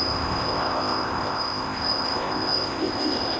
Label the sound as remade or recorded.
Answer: remade